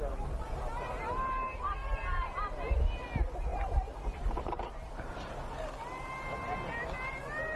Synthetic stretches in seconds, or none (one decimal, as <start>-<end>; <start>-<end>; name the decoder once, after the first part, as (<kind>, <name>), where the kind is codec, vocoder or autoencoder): 3.5-5.1 (vocoder, BigVGAN v2)